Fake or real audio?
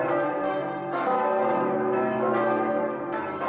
fake